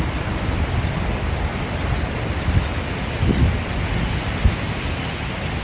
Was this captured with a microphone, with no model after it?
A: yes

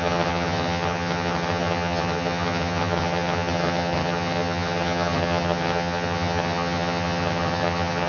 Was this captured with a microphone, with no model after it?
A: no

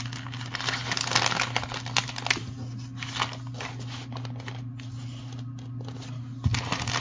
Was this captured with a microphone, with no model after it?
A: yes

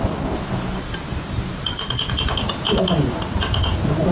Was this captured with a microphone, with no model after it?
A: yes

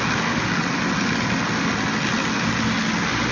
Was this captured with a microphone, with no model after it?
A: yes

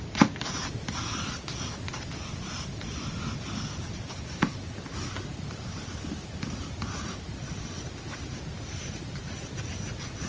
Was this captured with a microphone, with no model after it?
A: yes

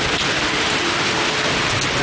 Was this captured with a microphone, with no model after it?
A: yes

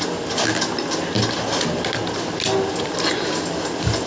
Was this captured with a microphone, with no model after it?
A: yes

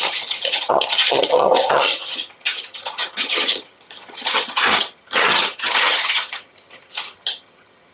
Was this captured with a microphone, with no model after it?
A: no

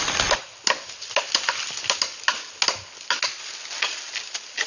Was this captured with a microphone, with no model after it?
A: yes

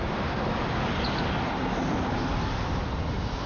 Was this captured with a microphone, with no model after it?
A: yes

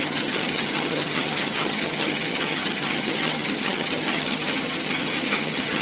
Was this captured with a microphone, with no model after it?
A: no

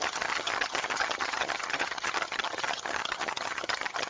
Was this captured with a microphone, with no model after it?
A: no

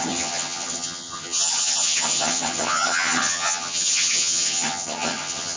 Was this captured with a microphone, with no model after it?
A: no